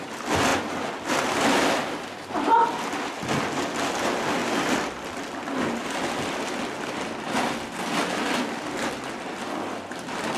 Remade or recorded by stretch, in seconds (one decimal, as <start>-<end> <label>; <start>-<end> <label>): 0.0-10.4 recorded